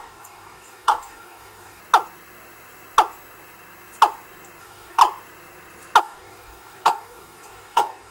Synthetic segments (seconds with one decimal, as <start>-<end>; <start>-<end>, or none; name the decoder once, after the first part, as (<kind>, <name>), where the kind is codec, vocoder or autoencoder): 0.0-1.8 (codec, DAC); 4.6-5.0; 6.0-8.1